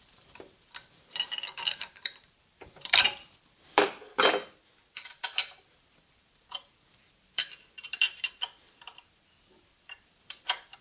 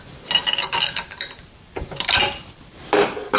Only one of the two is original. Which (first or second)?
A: second